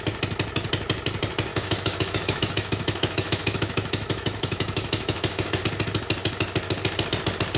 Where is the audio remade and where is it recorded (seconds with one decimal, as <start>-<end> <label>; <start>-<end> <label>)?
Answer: 0.0-1.5 recorded; 1.5-5.6 remade; 5.6-7.6 recorded